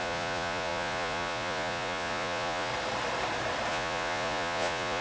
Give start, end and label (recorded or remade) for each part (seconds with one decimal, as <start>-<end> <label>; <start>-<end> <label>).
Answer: 0.0-2.7 remade; 2.7-3.7 recorded; 3.7-5.0 remade